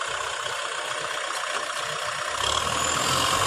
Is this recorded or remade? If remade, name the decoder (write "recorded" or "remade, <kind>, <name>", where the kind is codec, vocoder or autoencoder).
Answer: recorded